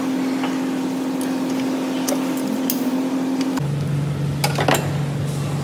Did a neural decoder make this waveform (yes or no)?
no